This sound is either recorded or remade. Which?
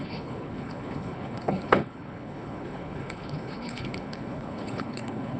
remade